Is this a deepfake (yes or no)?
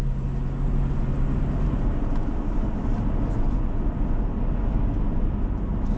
no